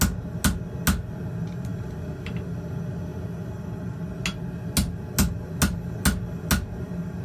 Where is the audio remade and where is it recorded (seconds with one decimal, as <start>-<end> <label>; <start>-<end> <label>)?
0.0-7.2 recorded